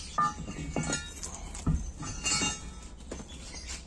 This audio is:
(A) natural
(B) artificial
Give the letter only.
A